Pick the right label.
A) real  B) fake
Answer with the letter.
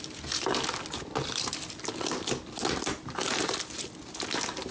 A